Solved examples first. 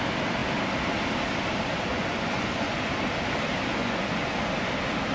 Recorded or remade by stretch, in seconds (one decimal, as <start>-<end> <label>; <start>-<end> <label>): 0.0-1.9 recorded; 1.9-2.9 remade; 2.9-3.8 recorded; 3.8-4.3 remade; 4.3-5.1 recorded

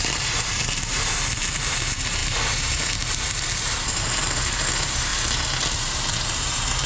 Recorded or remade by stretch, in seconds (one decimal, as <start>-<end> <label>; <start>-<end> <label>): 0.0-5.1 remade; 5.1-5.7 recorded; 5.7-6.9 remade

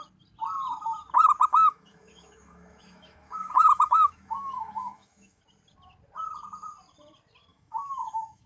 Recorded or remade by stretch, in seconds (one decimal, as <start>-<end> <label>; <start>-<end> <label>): 0.0-1.5 recorded; 1.5-5.4 remade; 5.4-7.5 recorded; 7.5-8.5 remade

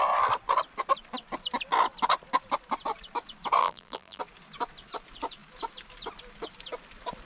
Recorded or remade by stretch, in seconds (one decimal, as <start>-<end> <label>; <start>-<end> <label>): 0.0-3.6 recorded; 3.6-4.2 remade; 4.2-7.3 recorded

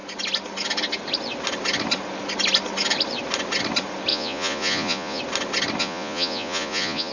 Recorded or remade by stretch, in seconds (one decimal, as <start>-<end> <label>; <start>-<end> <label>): 0.0-4.1 recorded; 4.1-5.2 remade; 5.2-5.8 recorded; 5.8-7.1 remade

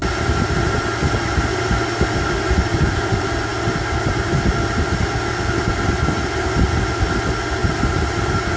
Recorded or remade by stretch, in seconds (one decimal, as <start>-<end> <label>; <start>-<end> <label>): 0.0-7.6 recorded; 7.6-8.6 remade